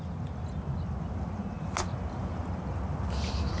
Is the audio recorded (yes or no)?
yes